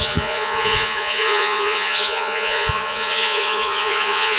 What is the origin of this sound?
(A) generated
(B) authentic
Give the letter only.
A